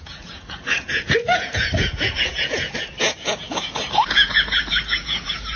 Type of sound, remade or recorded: remade